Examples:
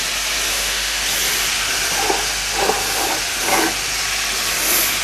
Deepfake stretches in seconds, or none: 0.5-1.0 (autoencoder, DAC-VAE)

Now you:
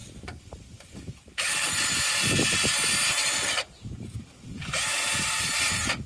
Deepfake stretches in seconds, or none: none

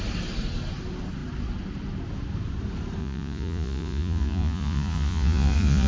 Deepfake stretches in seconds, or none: 3.0-5.9 (vocoder, Vocos)